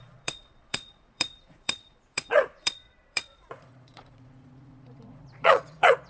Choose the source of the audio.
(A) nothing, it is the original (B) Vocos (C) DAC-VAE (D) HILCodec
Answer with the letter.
B